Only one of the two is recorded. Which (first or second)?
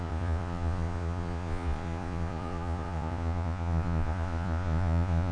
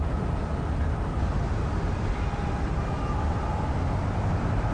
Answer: second